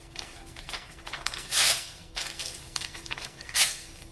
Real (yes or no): no